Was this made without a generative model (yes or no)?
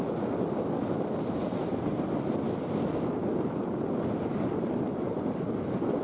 yes